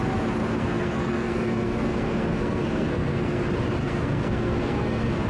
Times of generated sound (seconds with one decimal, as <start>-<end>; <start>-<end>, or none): 0.4-3.4; 3.8-5.3